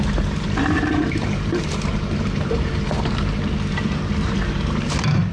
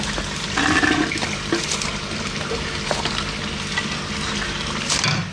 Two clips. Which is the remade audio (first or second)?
first